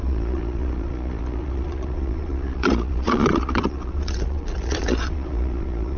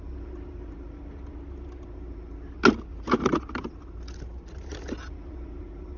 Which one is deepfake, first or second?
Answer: first